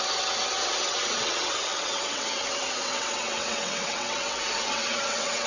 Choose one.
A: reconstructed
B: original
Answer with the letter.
A